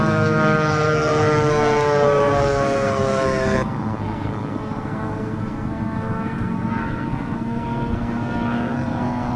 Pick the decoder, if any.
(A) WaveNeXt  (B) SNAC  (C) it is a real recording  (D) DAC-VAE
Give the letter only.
B